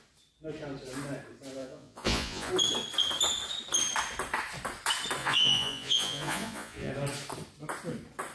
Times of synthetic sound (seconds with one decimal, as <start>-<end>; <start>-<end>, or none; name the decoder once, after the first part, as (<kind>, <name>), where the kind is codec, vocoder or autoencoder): 1.6-2.5 (vocoder, Vocos); 5.2-6.9